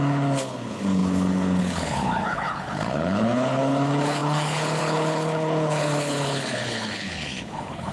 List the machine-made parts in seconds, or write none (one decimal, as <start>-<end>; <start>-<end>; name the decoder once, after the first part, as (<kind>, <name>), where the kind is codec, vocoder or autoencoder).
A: 0.0-7.9 (codec, HILCodec)